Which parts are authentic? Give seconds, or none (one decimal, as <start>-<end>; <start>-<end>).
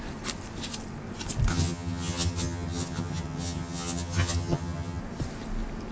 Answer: 0.0-1.5; 5.0-5.9